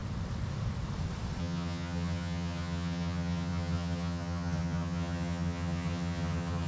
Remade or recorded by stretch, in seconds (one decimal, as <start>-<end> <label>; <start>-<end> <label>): 0.0-1.4 recorded; 1.4-6.7 remade